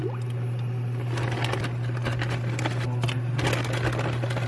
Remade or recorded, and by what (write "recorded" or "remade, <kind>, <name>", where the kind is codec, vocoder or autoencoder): recorded